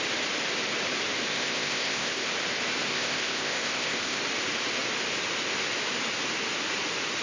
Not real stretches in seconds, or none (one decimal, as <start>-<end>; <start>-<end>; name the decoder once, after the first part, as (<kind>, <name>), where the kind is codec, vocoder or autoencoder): 1.3-2.3 (codec, ZipCodec); 2.9-4.2